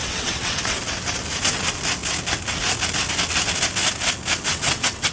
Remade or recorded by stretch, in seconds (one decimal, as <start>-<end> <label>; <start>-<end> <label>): 0.0-0.8 remade; 0.8-4.5 recorded; 4.5-5.1 remade